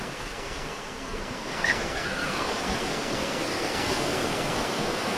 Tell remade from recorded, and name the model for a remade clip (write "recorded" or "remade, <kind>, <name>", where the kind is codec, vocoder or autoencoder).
remade, codec, SNAC